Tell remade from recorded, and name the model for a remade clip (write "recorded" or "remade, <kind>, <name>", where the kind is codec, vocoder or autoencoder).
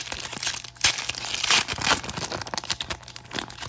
recorded